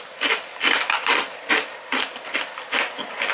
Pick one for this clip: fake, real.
fake